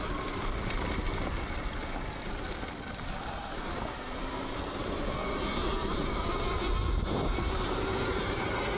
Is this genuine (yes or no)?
yes